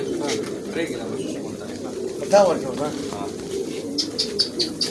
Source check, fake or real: real